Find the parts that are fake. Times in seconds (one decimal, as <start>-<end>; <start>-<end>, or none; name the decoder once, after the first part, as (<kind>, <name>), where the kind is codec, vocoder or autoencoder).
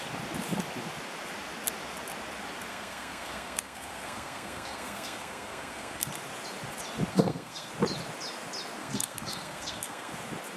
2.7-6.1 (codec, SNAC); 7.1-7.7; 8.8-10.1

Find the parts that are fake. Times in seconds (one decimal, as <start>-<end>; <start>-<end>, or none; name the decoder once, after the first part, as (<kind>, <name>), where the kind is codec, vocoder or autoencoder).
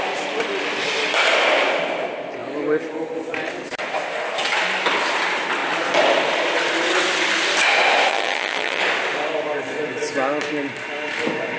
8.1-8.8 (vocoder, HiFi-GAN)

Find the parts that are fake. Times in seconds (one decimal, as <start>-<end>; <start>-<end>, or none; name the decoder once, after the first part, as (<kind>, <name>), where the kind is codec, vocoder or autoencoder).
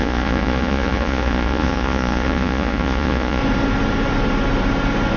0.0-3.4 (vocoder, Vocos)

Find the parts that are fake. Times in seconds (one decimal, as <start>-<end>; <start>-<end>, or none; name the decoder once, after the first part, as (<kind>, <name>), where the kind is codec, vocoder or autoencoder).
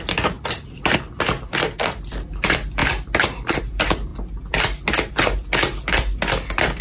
none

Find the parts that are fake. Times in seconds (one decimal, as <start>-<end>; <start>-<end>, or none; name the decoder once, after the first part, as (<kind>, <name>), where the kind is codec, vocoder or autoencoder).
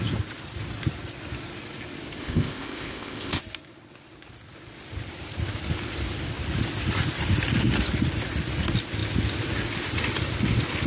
2.2-3.4 (codec, ZipCodec)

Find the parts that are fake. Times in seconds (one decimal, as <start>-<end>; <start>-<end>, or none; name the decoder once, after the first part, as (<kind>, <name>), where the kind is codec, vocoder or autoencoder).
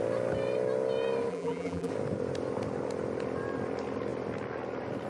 1.3-1.9 (vocoder, BigVGAN v2)